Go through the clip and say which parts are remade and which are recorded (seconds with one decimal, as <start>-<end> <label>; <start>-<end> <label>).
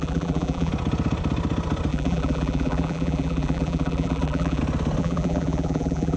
0.0-0.7 remade; 0.7-1.9 recorded; 1.9-4.6 remade; 4.6-5.0 recorded; 5.0-6.2 remade